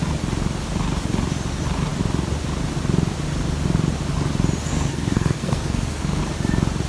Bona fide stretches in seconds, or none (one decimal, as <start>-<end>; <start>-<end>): 0.0-4.7; 6.2-6.9